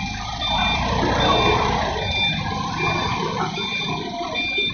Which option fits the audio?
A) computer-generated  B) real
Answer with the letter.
A